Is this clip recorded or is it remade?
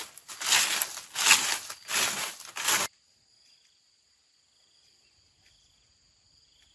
recorded